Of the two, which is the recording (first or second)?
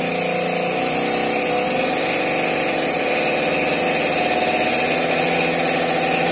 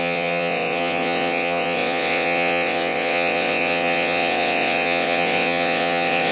first